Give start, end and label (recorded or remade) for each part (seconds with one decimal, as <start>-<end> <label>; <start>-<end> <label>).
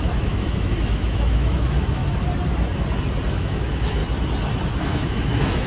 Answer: 0.0-2.0 remade; 2.0-3.3 recorded; 3.3-4.0 remade; 4.0-4.8 recorded; 4.8-5.7 remade